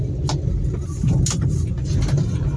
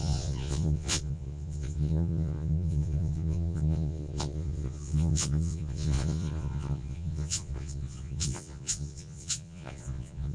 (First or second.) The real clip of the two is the first